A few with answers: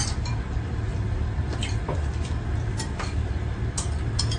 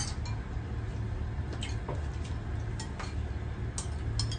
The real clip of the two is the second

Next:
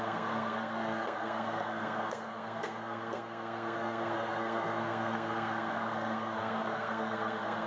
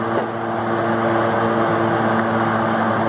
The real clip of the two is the second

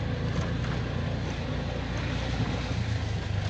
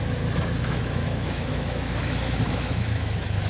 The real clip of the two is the first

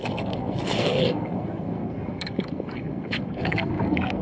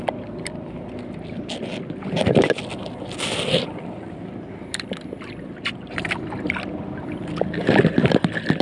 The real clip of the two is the second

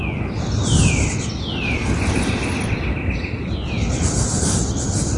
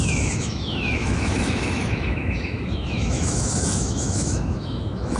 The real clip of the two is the first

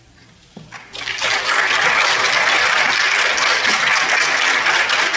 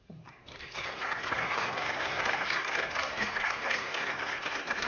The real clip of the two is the first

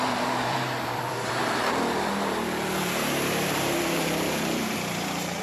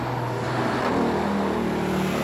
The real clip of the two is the second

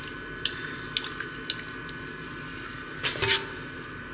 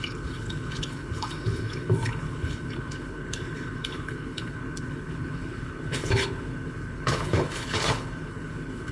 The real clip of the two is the first